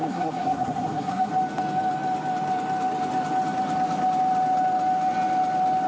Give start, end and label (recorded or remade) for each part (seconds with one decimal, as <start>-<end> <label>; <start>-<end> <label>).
0.0-1.3 remade; 1.3-5.9 recorded